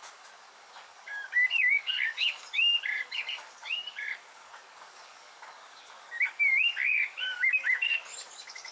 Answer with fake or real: fake